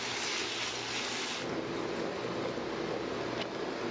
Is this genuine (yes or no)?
yes